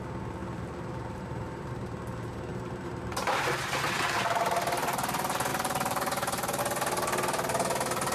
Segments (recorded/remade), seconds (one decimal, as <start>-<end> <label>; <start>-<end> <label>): 0.0-0.4 recorded; 0.4-1.7 remade; 1.7-2.5 recorded; 2.5-3.7 remade; 3.7-5.5 recorded; 5.5-6.6 remade; 6.6-8.1 recorded